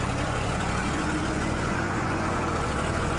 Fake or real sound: fake